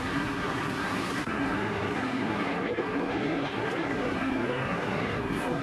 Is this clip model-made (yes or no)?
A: yes